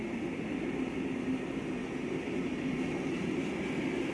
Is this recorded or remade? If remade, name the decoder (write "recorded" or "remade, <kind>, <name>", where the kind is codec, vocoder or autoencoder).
recorded